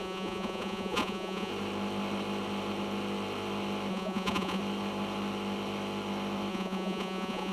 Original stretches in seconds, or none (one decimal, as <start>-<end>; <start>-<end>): 1.5-3.9; 4.6-6.5